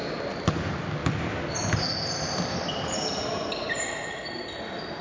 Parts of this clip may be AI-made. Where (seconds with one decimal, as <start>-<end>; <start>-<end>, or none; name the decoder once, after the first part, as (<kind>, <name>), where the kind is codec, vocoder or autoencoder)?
none